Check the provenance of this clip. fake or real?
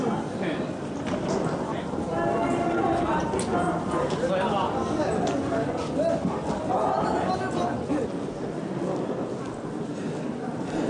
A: real